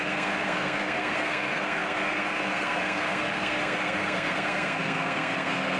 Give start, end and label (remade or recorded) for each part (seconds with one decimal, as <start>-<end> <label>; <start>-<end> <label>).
0.0-5.8 remade